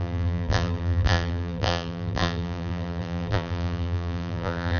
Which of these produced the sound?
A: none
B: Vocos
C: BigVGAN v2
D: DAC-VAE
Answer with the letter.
C